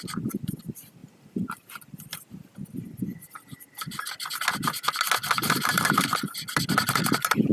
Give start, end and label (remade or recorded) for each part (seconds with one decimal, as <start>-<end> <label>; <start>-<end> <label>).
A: 0.0-5.4 recorded; 5.4-6.0 remade; 6.0-7.5 recorded